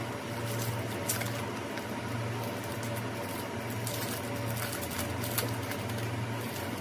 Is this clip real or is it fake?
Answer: real